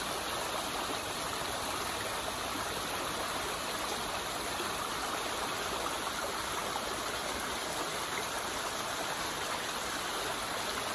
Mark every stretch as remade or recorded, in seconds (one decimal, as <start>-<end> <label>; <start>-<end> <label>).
0.0-10.9 recorded